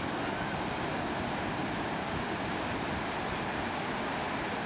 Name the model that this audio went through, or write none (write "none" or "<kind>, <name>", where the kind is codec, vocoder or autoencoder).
none